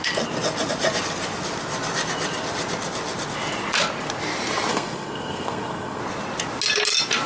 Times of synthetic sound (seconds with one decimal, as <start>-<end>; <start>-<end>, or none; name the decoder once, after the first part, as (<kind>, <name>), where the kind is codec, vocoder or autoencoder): 4.7-6.0 (codec, SNAC)